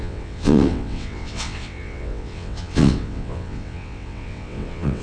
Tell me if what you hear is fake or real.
fake